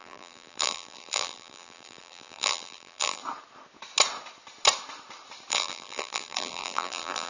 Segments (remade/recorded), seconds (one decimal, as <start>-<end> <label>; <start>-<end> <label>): 0.0-3.2 remade; 3.2-5.5 recorded; 5.5-7.3 remade